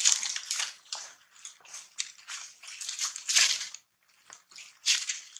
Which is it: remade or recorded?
recorded